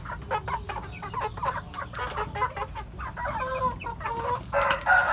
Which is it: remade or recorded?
recorded